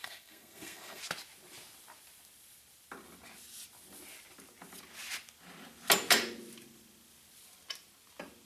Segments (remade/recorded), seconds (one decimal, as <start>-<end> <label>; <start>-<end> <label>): 0.0-1.0 remade; 1.0-8.5 recorded

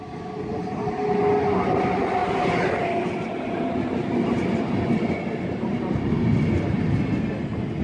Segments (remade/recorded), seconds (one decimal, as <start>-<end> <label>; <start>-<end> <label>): 0.0-7.8 recorded